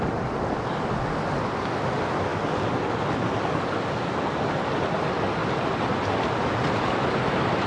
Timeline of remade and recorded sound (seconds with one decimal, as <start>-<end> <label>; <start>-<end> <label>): 0.0-7.7 recorded